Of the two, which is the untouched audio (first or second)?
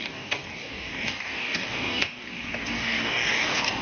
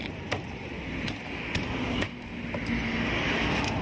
second